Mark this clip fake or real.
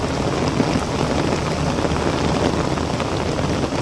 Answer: real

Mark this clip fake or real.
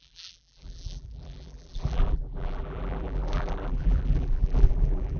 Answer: fake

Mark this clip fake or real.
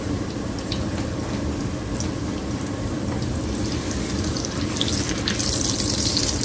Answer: fake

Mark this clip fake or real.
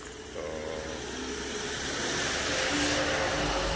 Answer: real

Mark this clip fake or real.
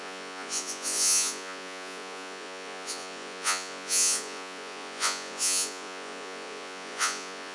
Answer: fake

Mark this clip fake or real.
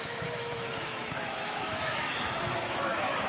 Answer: fake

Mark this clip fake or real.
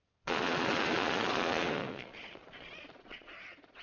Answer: fake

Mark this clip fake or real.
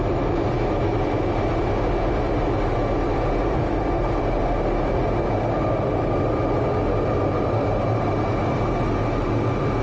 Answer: real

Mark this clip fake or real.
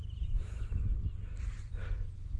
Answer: fake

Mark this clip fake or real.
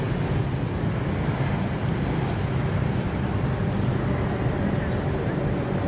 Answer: real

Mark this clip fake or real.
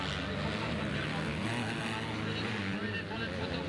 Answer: real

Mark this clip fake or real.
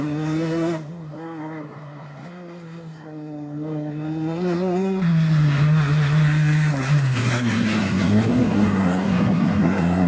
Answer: fake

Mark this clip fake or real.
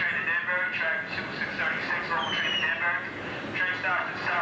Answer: real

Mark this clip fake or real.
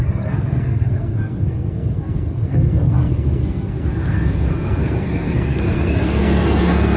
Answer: fake